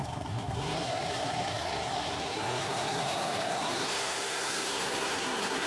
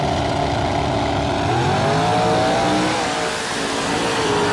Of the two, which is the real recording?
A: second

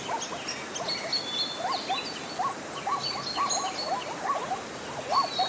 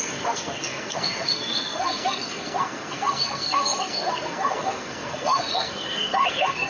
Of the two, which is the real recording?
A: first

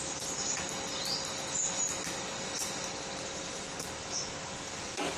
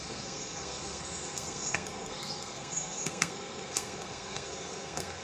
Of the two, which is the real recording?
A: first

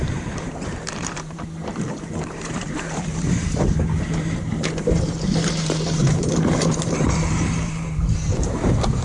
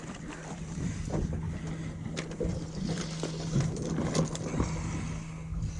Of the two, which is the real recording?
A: second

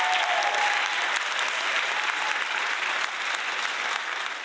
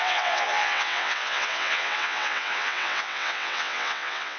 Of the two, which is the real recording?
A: first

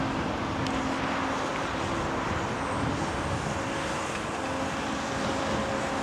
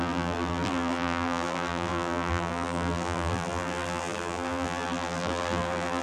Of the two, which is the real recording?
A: first